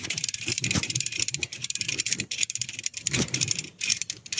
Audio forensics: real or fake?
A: fake